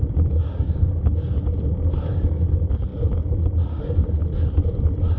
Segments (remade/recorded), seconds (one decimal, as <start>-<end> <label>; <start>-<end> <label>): 0.0-5.2 recorded